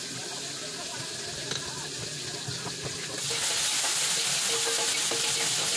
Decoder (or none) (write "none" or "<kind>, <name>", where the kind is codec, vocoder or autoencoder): none